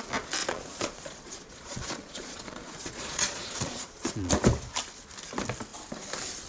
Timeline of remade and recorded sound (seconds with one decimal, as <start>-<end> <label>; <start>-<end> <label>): 0.0-0.4 recorded; 0.4-4.3 remade; 4.3-6.5 recorded